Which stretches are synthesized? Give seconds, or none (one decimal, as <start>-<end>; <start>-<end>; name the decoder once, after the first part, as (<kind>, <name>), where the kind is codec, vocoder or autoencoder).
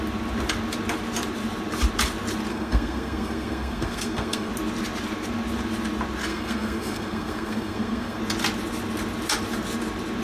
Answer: 2.5-4.5 (codec, SNAC); 6.3-8.2